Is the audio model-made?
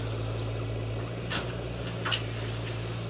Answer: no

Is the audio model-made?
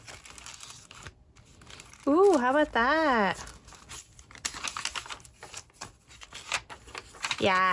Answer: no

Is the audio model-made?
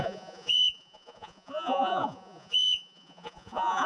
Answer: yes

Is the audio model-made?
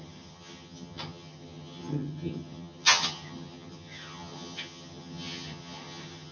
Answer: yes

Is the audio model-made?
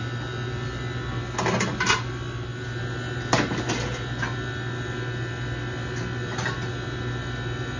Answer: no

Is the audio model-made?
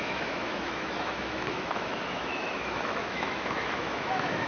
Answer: yes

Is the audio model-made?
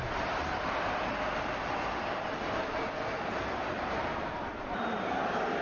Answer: no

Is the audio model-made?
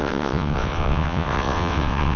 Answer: yes